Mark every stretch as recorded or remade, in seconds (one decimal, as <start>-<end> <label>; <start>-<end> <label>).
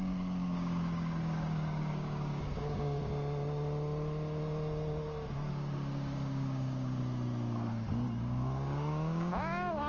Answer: 0.0-3.0 remade; 3.0-5.5 recorded; 5.5-7.0 remade; 7.0-8.2 recorded; 8.2-9.9 remade